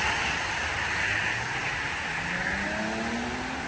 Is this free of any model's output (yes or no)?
yes